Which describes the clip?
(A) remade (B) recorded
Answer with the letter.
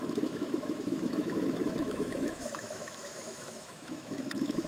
A